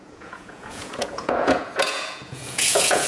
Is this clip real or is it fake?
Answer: fake